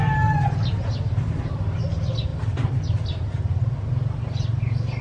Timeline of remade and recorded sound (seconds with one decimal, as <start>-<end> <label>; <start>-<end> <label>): 0.0-5.0 recorded